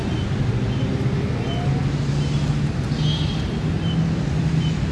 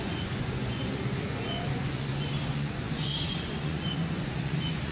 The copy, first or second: second